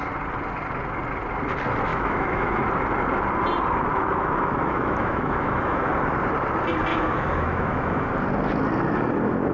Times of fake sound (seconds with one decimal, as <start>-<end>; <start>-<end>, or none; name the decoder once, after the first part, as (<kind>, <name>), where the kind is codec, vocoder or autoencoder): 1.9-2.6 (autoencoder, DAC-VAE); 3.9-5.9; 6.9-8.1